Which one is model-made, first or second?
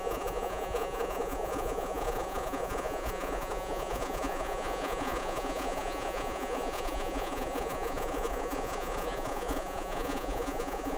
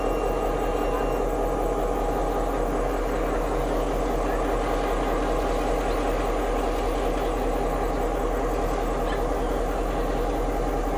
first